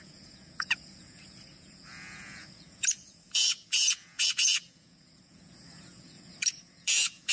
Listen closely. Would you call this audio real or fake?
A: fake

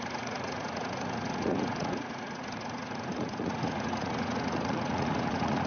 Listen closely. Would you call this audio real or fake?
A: fake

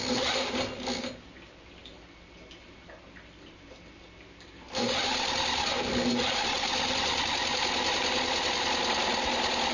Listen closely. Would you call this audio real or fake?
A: real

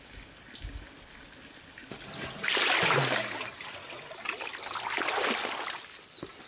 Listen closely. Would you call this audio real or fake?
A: real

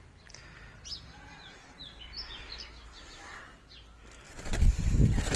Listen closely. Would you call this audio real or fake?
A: real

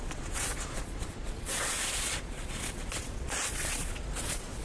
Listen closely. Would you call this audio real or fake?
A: fake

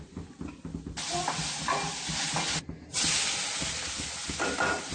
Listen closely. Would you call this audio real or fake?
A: real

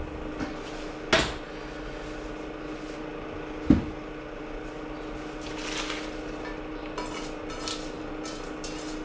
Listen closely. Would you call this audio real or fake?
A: real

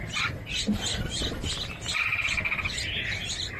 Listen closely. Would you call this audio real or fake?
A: real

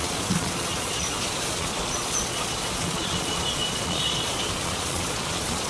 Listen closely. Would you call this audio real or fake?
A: fake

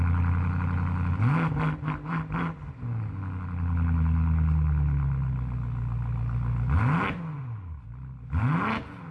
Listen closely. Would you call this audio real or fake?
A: real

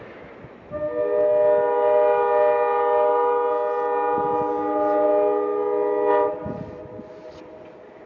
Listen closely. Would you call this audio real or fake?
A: real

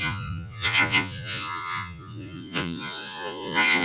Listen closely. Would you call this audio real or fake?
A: fake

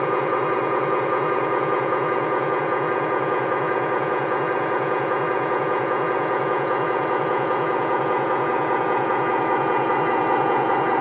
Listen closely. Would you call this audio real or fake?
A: fake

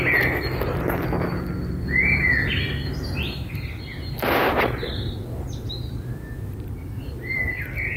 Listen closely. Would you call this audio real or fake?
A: real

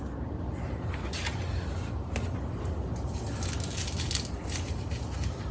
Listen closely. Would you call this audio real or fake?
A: real